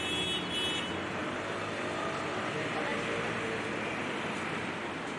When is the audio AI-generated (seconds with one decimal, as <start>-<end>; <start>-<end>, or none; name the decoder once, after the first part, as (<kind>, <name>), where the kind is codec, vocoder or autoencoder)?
1.2-2.5 (vocoder, BigVGAN v2); 2.9-4.6